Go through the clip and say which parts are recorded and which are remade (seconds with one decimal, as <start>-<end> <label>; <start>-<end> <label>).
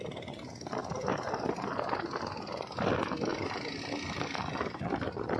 0.0-0.8 recorded; 0.8-2.9 remade; 2.9-3.3 recorded; 3.3-3.8 remade; 3.8-5.4 recorded